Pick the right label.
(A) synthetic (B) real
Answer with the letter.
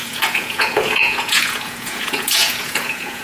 A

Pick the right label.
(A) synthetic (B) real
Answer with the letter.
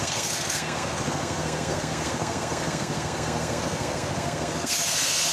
A